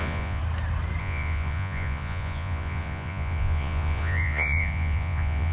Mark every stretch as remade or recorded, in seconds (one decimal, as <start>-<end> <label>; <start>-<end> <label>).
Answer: 0.0-0.4 remade; 0.4-1.0 recorded; 1.0-5.5 remade